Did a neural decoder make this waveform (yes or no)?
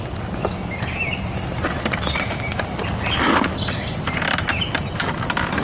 no